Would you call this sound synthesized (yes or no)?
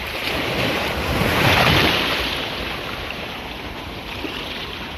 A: yes